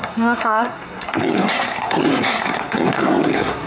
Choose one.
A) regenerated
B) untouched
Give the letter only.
A